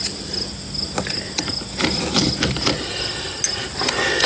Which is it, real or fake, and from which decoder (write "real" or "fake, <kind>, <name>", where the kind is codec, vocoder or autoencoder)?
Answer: real